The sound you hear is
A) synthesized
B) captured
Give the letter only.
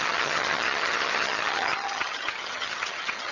A